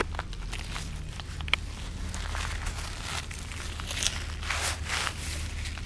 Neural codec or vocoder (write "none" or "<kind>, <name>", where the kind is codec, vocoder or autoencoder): none